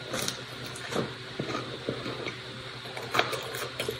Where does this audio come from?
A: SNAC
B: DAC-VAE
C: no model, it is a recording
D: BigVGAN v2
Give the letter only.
C